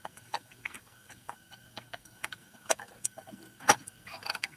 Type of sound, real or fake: fake